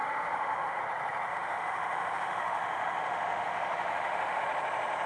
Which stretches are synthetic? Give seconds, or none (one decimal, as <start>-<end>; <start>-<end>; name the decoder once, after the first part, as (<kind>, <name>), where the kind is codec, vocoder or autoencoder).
0.0-0.8 (autoencoder, DAC-VAE); 1.3-4.4